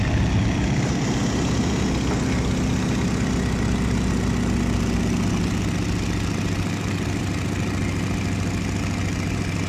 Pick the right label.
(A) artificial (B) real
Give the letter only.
B